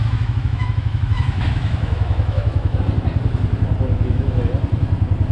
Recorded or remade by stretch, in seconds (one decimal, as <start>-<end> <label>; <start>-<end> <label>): 0.0-2.8 remade; 2.8-3.9 recorded; 3.9-4.4 remade; 4.4-5.3 recorded